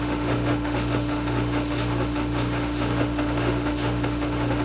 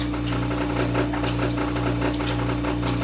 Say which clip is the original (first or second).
second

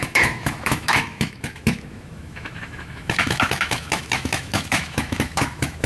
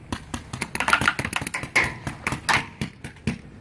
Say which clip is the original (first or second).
second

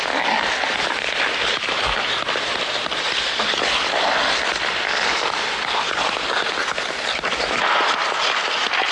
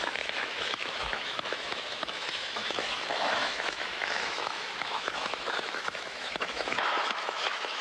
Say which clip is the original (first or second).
first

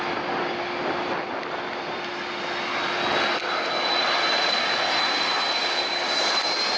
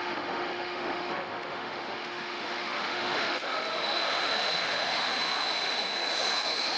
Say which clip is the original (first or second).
first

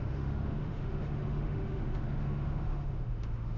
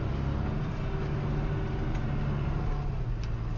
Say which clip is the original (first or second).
second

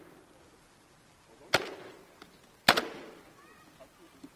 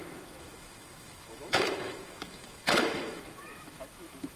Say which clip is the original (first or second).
first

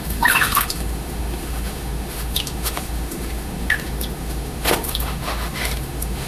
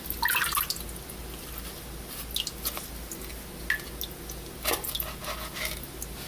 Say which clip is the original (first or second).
second